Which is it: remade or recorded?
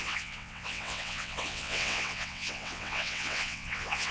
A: remade